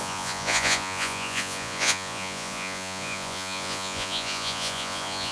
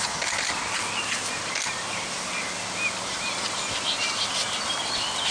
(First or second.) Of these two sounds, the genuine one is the second